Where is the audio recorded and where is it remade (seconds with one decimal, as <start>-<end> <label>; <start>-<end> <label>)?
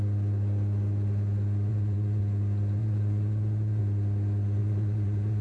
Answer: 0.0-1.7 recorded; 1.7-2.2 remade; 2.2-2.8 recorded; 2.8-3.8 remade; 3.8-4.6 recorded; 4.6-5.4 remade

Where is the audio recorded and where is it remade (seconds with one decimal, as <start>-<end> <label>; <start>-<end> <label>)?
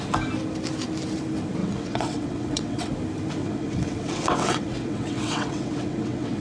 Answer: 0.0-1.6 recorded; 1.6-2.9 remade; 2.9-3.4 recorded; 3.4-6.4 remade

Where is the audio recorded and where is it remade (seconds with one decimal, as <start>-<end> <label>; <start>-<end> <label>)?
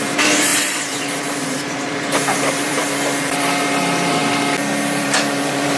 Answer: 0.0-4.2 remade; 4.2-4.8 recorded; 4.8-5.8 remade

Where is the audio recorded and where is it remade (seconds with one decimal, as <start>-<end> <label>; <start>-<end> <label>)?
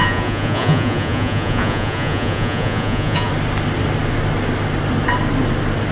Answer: 0.0-3.3 remade; 3.3-5.9 recorded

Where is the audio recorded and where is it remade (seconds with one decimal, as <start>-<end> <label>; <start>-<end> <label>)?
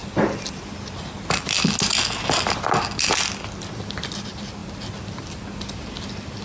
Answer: 0.0-6.4 recorded